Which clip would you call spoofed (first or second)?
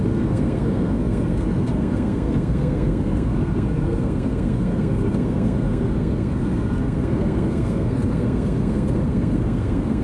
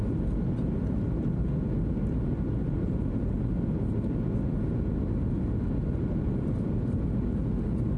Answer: first